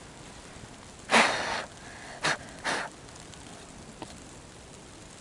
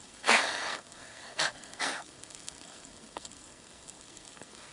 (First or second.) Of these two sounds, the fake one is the second